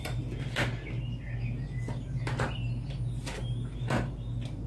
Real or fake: real